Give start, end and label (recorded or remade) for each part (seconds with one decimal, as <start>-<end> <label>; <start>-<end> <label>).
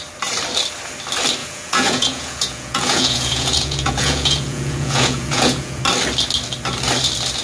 0.0-1.4 recorded; 1.4-5.8 remade; 5.8-7.4 recorded